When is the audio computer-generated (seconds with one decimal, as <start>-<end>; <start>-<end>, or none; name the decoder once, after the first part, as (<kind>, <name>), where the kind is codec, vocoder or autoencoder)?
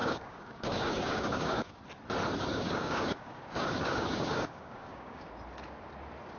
0.0-1.8 (codec, DAC); 2.5-5.3